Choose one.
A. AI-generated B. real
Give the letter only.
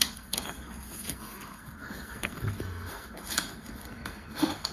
A